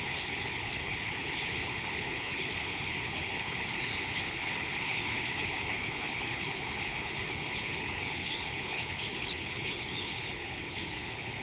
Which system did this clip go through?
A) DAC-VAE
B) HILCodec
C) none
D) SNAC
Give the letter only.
B